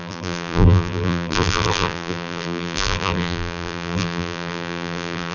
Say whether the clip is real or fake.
fake